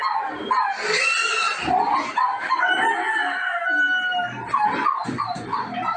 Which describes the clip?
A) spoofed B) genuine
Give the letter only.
B